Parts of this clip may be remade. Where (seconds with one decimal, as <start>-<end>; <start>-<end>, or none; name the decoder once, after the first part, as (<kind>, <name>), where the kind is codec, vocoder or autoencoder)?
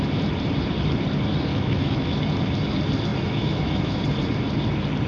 1.5-2.2 (autoencoder, DAC-VAE); 3.1-4.0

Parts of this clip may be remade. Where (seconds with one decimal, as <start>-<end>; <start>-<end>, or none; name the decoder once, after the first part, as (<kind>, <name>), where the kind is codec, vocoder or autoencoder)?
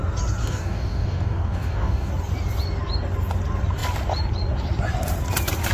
0.4-2.1 (codec, DAC)